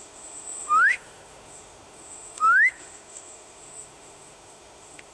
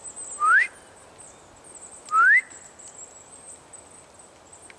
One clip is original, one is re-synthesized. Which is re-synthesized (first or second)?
first